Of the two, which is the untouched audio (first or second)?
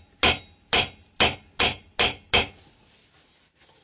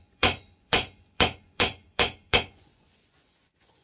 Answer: first